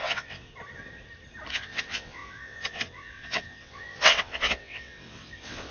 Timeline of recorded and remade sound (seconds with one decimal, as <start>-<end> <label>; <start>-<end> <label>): 0.0-0.5 remade; 0.5-1.5 recorded; 1.5-5.7 remade